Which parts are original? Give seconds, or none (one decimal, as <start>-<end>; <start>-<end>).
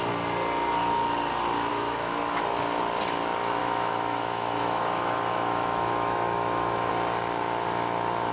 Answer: 0.0-1.7; 2.4-3.6; 6.9-8.3